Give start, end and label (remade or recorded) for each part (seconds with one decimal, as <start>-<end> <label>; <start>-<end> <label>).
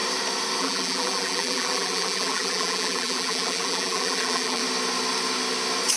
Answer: 0.0-0.6 recorded; 0.6-4.6 remade; 4.6-6.0 recorded